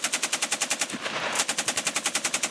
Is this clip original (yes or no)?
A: yes